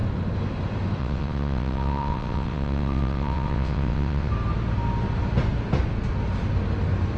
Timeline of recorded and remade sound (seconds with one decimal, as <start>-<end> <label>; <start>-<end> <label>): 0.0-1.0 recorded; 1.0-4.3 remade; 4.3-7.2 recorded